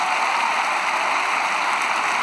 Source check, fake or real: real